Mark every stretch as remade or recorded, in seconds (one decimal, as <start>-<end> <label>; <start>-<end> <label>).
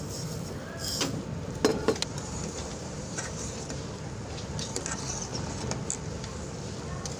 0.0-1.7 recorded; 1.7-3.9 remade; 3.9-7.2 recorded